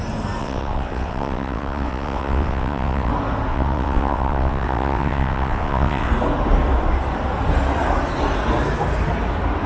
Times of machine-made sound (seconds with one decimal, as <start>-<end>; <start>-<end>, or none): 0.4-3.1; 3.5-6.1